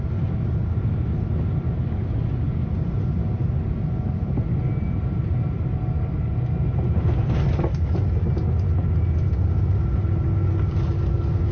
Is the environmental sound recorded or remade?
recorded